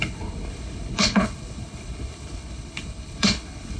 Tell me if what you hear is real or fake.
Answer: fake